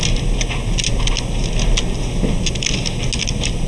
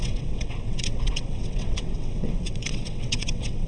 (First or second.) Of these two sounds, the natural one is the first